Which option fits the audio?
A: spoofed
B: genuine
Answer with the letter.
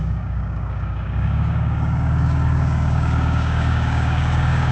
A